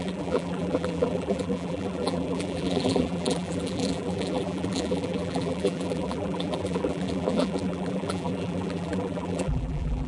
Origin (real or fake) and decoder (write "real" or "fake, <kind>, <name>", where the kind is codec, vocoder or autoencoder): fake, vocoder, BigVGAN v2